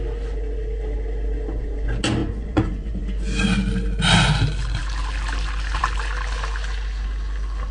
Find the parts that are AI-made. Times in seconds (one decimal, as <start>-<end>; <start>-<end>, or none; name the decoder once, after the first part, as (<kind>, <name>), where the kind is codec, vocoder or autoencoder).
2.2-3.0 (vocoder, Vocos)